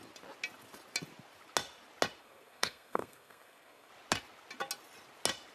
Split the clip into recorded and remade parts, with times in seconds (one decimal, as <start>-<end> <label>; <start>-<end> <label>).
0.0-2.2 recorded; 2.2-3.9 remade; 3.9-5.5 recorded